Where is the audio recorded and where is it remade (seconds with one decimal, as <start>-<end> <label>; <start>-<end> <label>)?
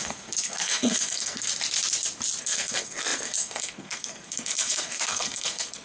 0.0-1.5 remade; 1.5-2.4 recorded; 2.4-5.8 remade